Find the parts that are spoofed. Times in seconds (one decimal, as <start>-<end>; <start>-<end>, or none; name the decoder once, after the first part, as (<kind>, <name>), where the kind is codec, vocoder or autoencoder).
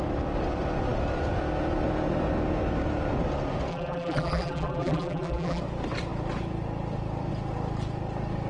3.7-5.6 (vocoder, BigVGAN v2)